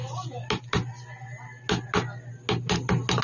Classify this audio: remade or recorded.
recorded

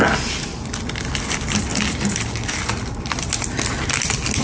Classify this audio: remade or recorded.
recorded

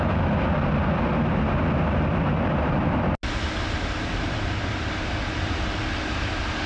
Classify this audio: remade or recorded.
recorded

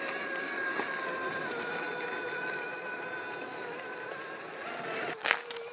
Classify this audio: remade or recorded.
recorded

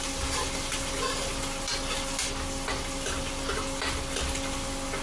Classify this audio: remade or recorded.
recorded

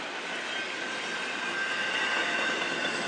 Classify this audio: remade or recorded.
recorded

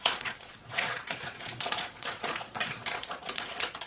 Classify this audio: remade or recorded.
remade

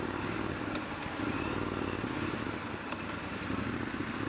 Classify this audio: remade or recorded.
recorded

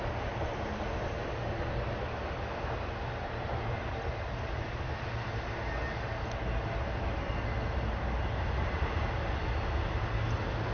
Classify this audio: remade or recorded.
recorded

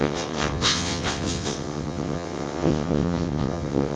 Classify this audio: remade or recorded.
remade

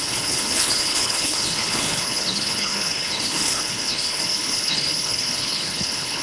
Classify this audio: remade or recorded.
remade